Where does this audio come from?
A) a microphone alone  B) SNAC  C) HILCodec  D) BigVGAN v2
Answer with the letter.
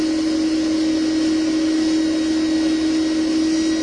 A